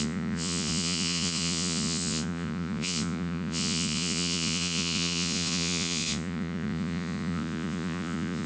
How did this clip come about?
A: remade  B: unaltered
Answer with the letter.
A